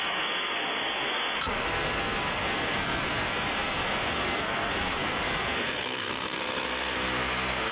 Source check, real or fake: fake